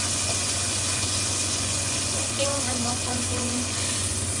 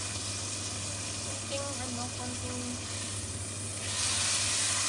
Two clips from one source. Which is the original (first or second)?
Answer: second